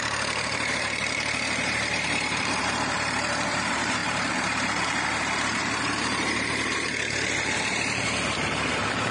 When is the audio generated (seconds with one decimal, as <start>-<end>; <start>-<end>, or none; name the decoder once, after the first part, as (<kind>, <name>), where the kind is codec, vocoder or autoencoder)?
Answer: 0.0-9.1 (vocoder, BigVGAN v2)